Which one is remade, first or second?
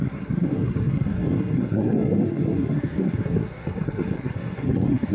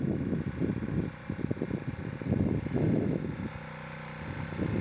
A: first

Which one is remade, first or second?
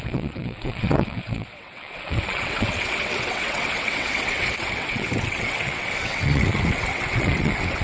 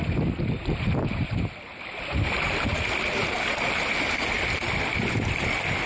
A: first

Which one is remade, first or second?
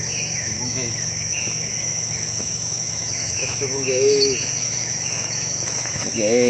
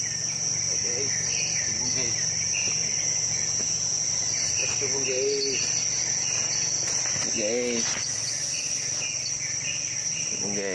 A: first